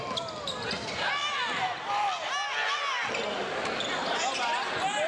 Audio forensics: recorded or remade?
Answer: recorded